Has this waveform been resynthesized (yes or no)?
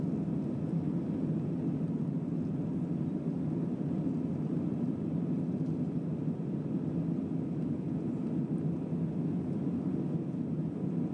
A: no